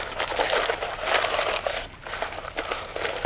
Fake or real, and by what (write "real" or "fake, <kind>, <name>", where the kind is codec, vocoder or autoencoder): real